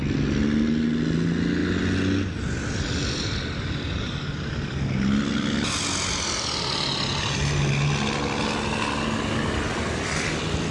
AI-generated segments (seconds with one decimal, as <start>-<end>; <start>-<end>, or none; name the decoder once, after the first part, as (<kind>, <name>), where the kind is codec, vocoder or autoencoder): none